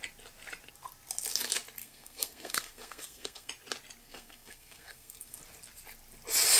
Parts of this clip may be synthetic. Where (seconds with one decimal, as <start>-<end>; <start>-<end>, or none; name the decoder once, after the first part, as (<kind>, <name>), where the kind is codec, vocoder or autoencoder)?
1.8-3.5 (codec, SNAC); 4.0-5.4